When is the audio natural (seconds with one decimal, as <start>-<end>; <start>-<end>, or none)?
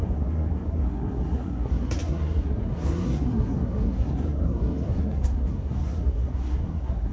none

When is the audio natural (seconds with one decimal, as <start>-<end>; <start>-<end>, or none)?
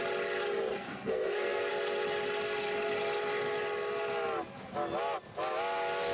0.0-0.7; 1.7-6.1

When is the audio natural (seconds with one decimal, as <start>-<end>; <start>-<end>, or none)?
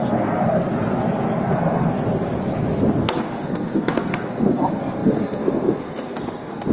0.6-1.4; 1.9-3.0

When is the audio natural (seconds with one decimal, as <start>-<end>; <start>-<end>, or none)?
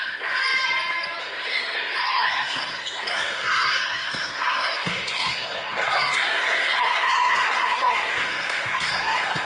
0.4-1.2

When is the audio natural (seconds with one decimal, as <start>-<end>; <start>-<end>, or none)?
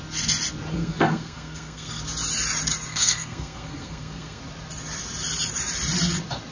0.0-0.7; 2.0-2.9; 4.4-6.5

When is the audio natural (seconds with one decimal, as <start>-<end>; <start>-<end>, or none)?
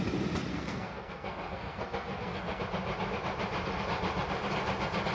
0.0-0.5; 2.6-5.1